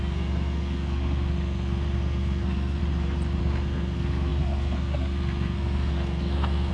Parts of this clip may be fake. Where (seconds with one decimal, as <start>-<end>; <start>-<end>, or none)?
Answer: 0.0-2.8; 3.4-6.7